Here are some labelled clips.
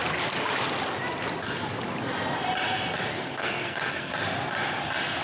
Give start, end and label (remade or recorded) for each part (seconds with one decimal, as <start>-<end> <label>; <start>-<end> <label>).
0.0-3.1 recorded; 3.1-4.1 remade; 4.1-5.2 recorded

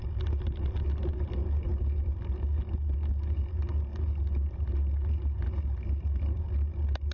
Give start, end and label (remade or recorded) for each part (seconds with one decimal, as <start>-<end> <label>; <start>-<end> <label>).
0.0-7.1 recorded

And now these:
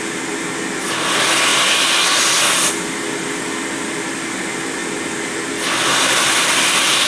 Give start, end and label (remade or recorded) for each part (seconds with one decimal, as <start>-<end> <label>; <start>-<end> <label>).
0.0-7.1 recorded

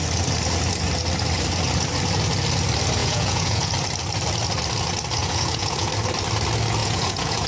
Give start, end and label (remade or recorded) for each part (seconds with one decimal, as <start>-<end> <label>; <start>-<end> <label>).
0.0-3.0 recorded; 3.0-3.7 remade; 3.7-5.2 recorded; 5.2-5.9 remade; 5.9-6.8 recorded; 6.8-7.5 remade